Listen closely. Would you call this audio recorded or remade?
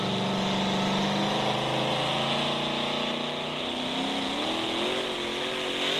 recorded